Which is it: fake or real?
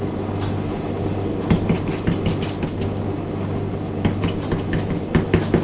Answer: real